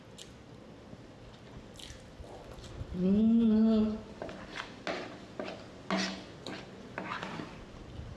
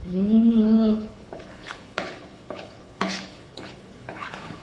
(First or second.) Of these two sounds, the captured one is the first